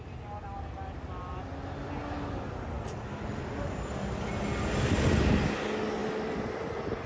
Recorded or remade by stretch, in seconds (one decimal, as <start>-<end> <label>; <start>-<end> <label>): 0.0-6.0 recorded; 6.0-7.1 remade